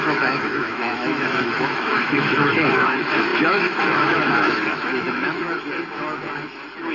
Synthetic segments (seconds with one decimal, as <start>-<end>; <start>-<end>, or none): 0.0-5.4